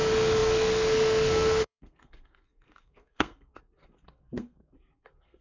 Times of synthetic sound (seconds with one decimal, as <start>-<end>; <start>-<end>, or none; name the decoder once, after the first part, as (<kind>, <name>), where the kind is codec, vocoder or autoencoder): 0.0-5.4 (codec, SNAC)